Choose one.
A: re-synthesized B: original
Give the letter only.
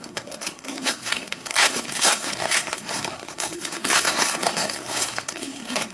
A